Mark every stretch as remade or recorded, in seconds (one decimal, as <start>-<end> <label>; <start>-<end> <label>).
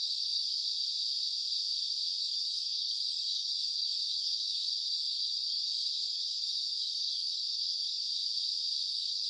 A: 0.0-0.6 remade; 0.6-2.2 recorded; 2.2-8.0 remade; 8.0-8.9 recorded; 8.9-9.3 remade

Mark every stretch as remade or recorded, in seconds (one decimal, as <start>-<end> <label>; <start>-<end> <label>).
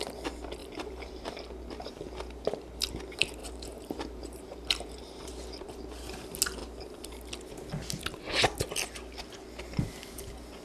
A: 0.0-0.6 recorded; 0.6-1.4 remade; 1.4-3.4 recorded; 3.4-5.3 remade; 5.3-10.6 recorded